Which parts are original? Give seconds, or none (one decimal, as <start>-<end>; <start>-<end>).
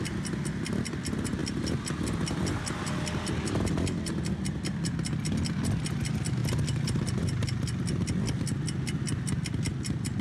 0.0-10.2